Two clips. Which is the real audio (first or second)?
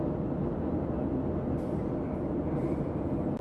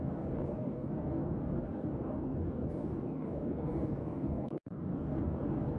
first